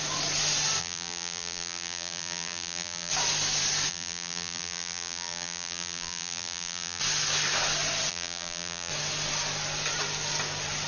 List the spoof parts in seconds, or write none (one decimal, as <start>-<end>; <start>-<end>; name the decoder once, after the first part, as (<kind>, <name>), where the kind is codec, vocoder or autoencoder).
0.8-3.1 (vocoder, BigVGAN v2); 3.9-7.0; 8.1-8.9